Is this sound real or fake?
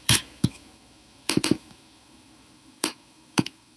fake